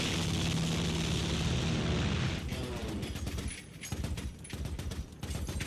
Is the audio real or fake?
real